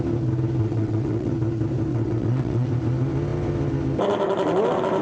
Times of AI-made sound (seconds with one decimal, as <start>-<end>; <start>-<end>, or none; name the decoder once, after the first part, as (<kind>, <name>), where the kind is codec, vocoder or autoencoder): 0.6-1.3 (vocoder, WaveNeXt); 1.9-2.7